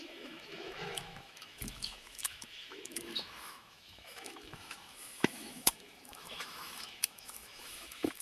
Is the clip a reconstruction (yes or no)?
yes